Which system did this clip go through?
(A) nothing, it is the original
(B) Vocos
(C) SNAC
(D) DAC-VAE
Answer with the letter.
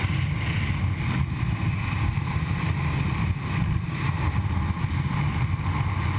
A